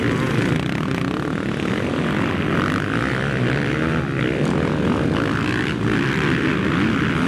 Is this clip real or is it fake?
real